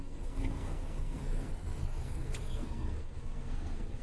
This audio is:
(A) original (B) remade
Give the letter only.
B